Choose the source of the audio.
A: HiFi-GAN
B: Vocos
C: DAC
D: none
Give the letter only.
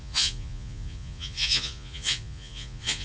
B